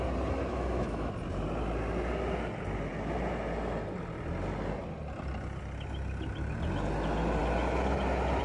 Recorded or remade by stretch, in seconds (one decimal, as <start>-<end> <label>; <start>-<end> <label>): 0.0-0.5 recorded; 0.5-1.1 remade; 1.1-8.4 recorded